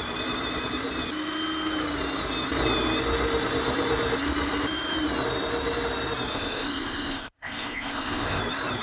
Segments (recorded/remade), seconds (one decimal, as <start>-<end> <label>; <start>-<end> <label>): 0.0-6.3 recorded; 6.3-8.4 remade; 8.4-8.8 recorded